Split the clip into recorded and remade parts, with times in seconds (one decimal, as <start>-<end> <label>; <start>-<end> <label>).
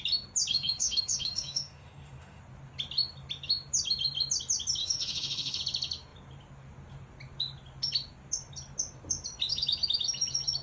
0.0-0.5 recorded; 0.5-2.4 remade; 2.4-4.8 recorded; 4.8-5.6 remade; 5.6-10.6 recorded